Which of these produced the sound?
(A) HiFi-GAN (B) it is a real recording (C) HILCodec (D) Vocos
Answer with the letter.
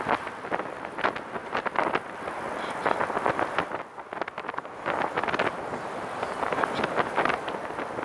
B